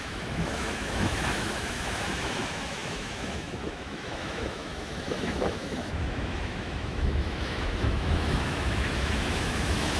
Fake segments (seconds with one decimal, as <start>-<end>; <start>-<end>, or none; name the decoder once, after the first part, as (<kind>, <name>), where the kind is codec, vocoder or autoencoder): 0.0-10.0 (autoencoder, DAC-VAE)